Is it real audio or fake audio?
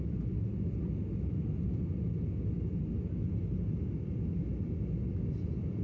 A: real